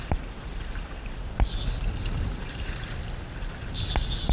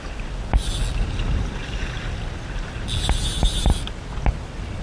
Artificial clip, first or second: first